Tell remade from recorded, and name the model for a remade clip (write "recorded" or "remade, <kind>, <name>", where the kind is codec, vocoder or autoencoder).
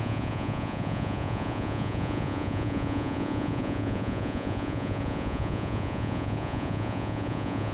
remade, vocoder, Vocos